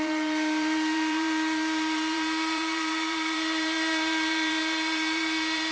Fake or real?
fake